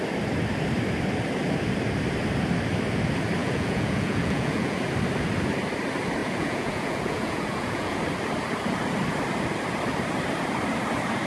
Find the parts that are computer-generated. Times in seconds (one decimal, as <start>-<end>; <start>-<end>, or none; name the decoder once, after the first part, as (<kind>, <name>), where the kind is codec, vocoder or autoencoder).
3.4-4.8 (vocoder, Vocos); 6.2-8.0